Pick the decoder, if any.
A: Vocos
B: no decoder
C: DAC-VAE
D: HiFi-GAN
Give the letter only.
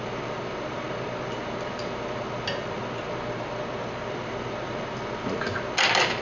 B